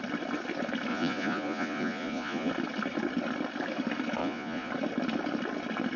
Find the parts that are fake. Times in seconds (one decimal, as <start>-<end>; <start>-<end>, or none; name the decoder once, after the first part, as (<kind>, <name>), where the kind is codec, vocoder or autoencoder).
0.9-2.5 (vocoder, Vocos); 4.2-4.7